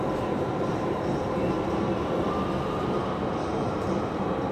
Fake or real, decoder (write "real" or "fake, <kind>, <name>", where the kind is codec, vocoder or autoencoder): real